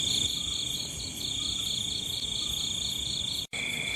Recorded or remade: remade